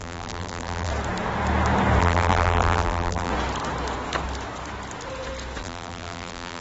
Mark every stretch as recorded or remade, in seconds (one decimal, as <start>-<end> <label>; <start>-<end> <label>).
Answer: 0.0-0.9 remade; 0.9-2.0 recorded; 2.0-3.3 remade; 3.3-5.6 recorded; 5.6-6.6 remade

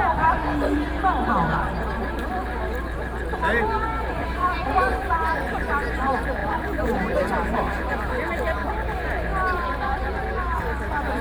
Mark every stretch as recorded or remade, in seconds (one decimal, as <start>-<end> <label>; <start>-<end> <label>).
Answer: 0.0-0.4 remade; 0.4-3.8 recorded; 3.8-11.2 remade

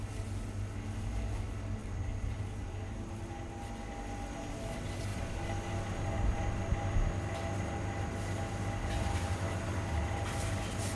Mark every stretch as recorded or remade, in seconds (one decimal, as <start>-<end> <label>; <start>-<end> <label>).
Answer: 0.0-1.8 recorded; 1.8-3.1 remade; 3.1-10.9 recorded

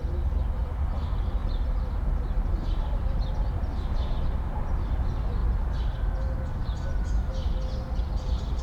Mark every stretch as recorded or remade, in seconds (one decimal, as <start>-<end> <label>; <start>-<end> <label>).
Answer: 0.0-1.4 recorded; 1.4-3.3 remade; 3.3-8.6 recorded

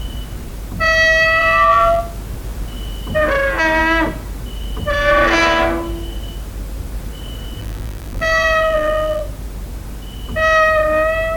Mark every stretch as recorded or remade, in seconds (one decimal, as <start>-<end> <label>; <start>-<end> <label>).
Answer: 0.0-1.4 recorded; 1.4-2.0 remade; 2.0-7.6 recorded; 7.6-9.2 remade; 9.2-11.4 recorded

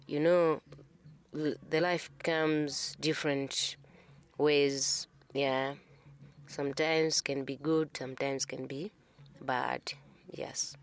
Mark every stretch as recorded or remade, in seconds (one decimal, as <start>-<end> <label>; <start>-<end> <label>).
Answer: 0.0-0.8 recorded; 0.8-1.8 remade; 1.8-6.7 recorded; 6.7-7.2 remade; 7.2-10.8 recorded